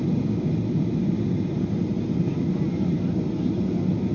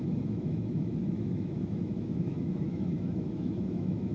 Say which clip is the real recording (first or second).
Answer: first